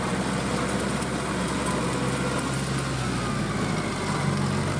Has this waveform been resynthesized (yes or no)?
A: no